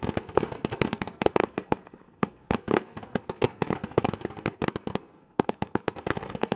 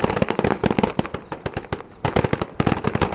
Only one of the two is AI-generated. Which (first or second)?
first